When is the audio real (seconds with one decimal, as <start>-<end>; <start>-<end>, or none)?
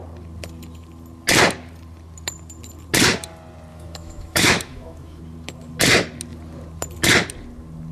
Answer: 0.0-3.7; 5.2-7.9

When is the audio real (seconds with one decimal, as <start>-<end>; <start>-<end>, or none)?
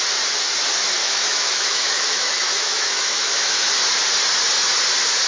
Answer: 0.0-1.0; 3.7-5.3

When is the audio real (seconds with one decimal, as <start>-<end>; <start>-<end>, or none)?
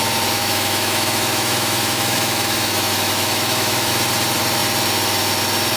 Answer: 0.0-0.4; 3.9-5.8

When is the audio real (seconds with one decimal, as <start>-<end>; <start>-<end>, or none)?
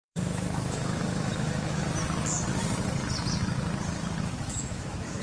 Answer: 1.8-4.2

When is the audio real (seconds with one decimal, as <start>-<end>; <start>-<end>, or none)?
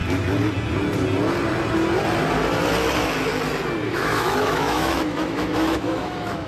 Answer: 0.0-3.9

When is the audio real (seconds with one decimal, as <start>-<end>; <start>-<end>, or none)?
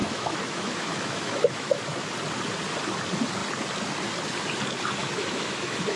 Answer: 1.8-5.0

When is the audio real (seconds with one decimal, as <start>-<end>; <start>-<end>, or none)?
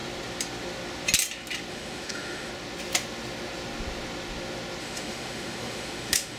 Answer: 0.0-1.7; 2.5-4.8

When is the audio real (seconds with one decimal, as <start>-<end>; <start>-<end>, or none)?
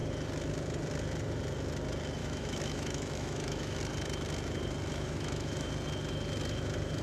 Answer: 0.0-2.2; 3.8-4.9; 5.7-7.0